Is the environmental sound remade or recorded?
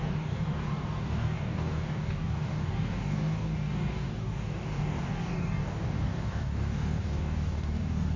remade